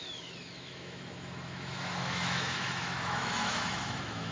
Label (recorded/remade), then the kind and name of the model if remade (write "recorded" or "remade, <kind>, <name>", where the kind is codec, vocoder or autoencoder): remade, autoencoder, DAC-VAE